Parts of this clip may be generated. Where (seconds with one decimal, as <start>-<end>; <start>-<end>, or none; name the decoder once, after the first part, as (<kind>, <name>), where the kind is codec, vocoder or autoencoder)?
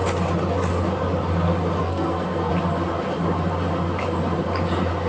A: 1.8-2.5 (codec, SNAC)